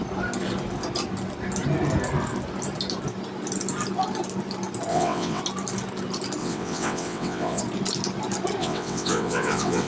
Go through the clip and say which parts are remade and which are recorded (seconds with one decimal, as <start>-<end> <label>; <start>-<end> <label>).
0.0-4.9 recorded; 4.9-5.4 remade; 5.4-6.4 recorded; 6.4-7.6 remade; 7.6-8.6 recorded; 8.6-9.9 remade